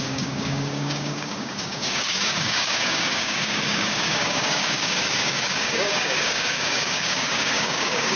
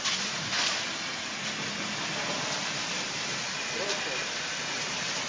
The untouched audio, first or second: second